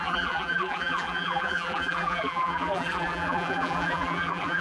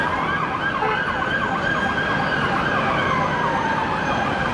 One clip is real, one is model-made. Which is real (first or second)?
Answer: second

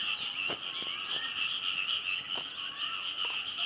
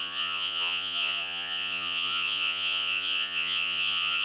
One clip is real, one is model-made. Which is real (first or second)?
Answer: first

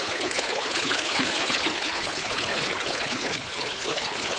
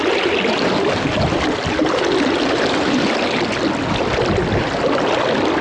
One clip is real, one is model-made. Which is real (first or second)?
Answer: second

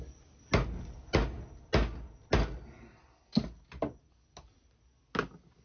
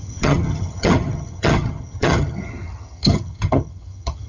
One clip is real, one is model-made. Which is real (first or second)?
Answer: first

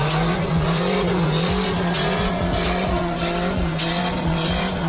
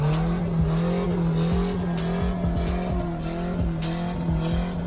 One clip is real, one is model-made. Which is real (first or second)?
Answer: second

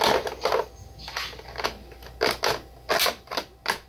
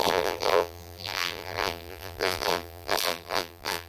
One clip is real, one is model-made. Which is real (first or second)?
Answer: first